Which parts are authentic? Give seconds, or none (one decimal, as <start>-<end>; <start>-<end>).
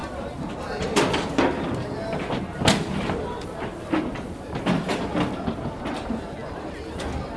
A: 0.0-7.4